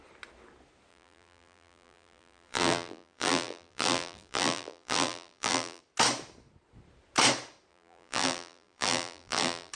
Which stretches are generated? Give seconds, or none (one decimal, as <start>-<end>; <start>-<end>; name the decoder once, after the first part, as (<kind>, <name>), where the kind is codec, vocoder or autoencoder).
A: 0.9-5.8 (vocoder, BigVGAN v2); 7.7-9.7